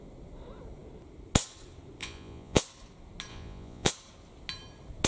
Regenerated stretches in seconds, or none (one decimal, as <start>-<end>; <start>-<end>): 2.0-2.6; 3.3-3.9